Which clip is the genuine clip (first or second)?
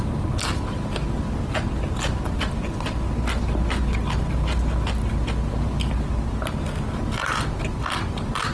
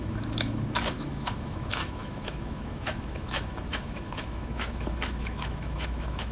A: first